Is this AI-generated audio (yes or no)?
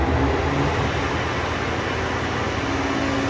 no